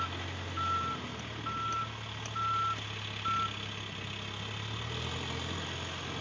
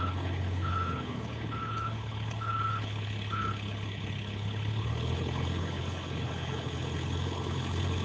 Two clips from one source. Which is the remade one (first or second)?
second